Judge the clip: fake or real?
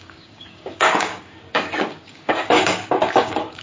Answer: fake